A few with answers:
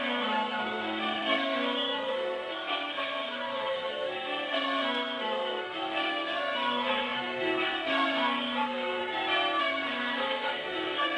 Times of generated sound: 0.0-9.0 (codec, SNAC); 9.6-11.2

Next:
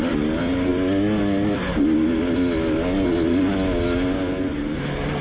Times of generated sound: none